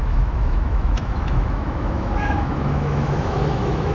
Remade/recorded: remade